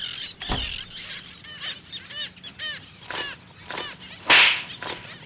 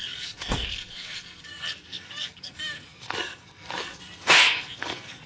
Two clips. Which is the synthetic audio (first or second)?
second